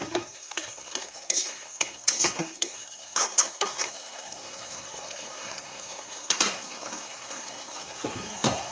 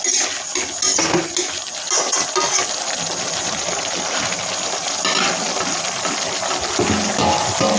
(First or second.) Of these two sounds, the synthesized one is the first